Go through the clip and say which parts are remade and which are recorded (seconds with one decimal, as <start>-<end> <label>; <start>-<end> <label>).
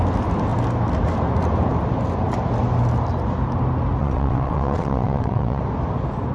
0.0-4.0 recorded; 4.0-5.6 remade; 5.6-6.3 recorded